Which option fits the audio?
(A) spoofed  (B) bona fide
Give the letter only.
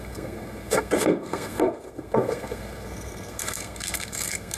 A